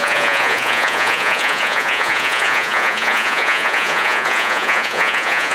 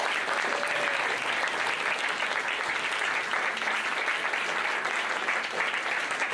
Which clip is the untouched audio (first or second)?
second